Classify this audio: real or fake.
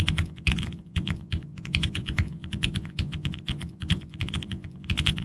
fake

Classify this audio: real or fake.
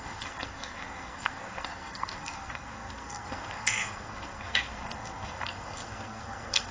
fake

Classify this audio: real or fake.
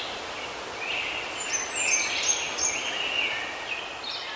real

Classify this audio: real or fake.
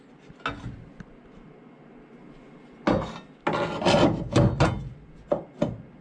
real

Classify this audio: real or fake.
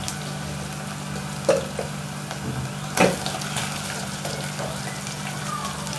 real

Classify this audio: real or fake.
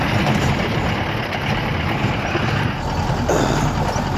real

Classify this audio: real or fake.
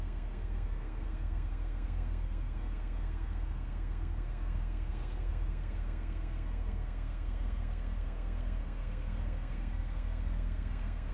fake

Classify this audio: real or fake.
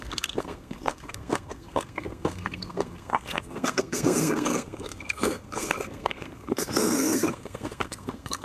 fake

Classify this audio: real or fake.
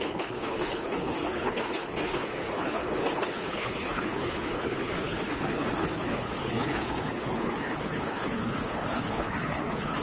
fake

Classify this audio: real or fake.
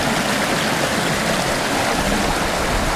real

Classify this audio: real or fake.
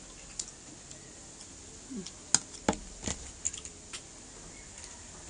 real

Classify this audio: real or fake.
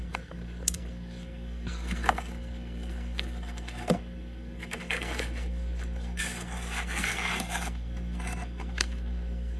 fake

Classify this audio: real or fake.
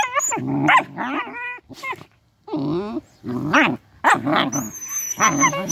real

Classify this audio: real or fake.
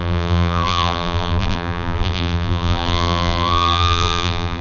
fake